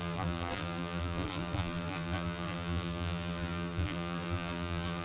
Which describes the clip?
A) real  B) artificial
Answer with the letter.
B